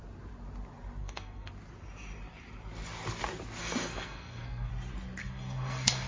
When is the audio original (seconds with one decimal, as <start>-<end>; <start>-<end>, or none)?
0.0-1.0; 1.5-3.6; 4.7-5.2